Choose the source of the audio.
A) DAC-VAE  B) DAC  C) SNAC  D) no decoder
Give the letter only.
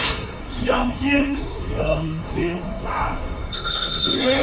C